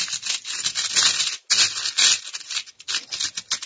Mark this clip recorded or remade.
recorded